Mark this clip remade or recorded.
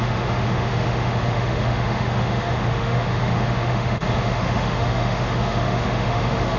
remade